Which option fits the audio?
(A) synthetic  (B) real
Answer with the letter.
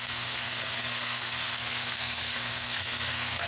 A